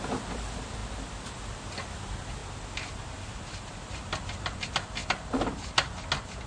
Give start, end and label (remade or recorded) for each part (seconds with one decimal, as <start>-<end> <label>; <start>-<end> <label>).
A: 0.0-6.5 recorded